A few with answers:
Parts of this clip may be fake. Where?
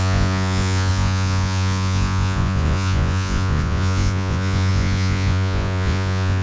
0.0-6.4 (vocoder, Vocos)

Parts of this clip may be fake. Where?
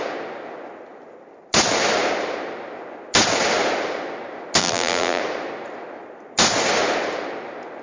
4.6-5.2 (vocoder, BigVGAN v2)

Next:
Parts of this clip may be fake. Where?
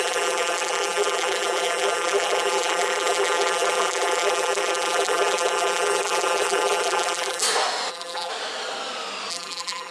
0.0-7.4 (vocoder, BigVGAN v2); 7.9-8.3; 9.3-9.9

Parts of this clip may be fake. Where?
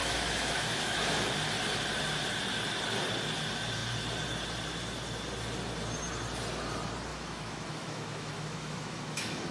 0.0-1.3 (autoencoder, DAC-VAE); 7.1-9.5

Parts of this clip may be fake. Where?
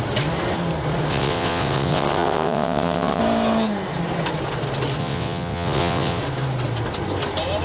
1.1-3.2 (vocoder, WaveNeXt); 5.0-6.2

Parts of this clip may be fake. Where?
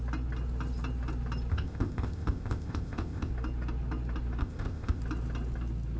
1.5-3.3 (codec, ZipCodec); 4.4-5.0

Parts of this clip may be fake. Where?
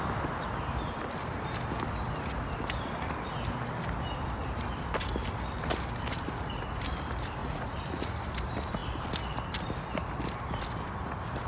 7.4-8.1 (vocoder, Vocos)